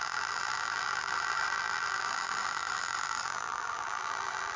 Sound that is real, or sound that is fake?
fake